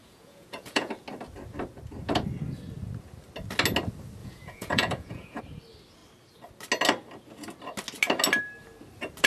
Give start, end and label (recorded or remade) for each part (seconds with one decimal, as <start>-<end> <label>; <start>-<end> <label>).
0.0-0.9 remade; 0.9-4.2 recorded; 4.2-5.4 remade; 5.4-9.3 recorded